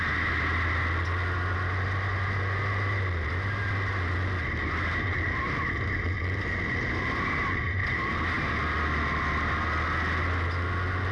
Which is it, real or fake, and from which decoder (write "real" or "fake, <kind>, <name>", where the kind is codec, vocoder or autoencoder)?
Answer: real